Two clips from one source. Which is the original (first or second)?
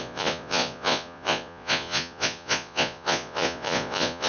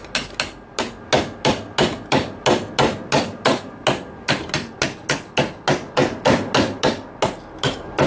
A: second